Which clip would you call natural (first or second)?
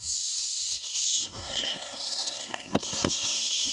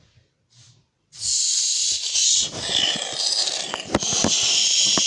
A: second